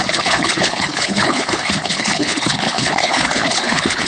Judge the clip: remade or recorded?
remade